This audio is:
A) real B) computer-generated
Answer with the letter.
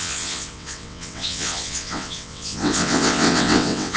B